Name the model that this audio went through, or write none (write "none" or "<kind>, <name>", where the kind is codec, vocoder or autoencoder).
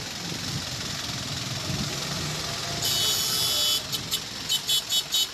none